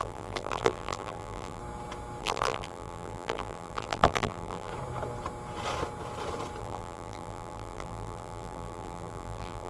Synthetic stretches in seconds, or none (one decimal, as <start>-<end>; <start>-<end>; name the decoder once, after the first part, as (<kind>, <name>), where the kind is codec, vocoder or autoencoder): 0.0-1.6 (vocoder, BigVGAN v2); 2.2-4.7; 6.6-9.7

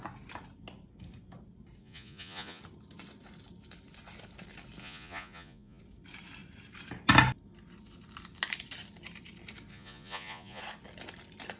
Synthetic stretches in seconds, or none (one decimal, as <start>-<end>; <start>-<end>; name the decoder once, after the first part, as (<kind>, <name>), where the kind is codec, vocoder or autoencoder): 1.8-2.6 (vocoder, Vocos); 4.8-5.8; 9.7-10.6

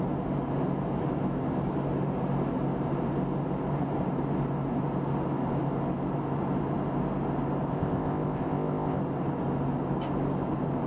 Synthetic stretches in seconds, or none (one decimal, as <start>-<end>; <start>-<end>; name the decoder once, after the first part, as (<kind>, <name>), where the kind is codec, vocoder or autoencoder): 7.7-9.0 (codec, ZipCodec)

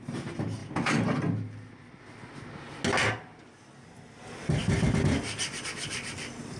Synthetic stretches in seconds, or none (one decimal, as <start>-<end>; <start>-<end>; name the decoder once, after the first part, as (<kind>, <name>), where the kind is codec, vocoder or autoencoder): none

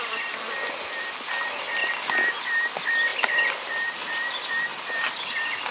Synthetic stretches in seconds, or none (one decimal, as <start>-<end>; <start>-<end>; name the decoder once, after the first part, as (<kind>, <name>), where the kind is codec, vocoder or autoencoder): none

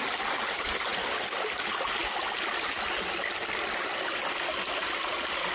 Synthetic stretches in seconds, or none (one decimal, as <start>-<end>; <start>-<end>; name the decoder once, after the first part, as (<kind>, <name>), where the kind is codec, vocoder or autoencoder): none

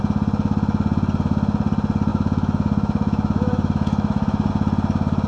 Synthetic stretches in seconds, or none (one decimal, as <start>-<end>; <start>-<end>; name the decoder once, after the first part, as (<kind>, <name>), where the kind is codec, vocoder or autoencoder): 2.1-4.5 (autoencoder, DAC-VAE)

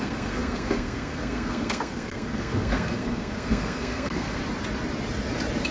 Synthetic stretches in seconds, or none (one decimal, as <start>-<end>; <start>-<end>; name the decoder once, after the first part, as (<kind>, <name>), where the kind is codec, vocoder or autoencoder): 0.0-4.4 (codec, SNAC)